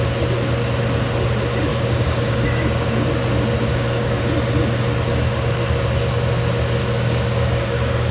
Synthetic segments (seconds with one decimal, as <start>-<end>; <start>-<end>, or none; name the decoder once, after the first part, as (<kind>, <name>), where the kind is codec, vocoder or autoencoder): 1.7-3.1 (codec, DAC); 3.7-4.2; 6.8-8.1